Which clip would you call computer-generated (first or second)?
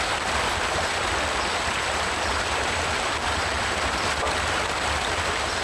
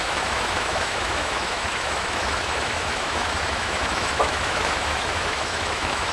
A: second